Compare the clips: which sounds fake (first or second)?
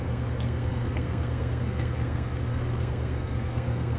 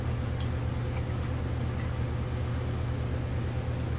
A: first